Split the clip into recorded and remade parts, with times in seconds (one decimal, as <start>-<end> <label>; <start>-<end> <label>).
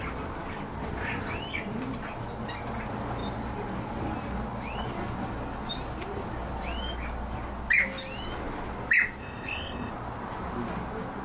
0.0-9.2 recorded; 9.2-9.9 remade; 9.9-11.2 recorded